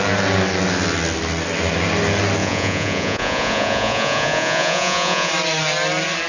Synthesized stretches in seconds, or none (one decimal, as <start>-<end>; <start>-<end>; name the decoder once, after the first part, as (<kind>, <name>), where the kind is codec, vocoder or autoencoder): 2.4-5.3 (vocoder, Vocos)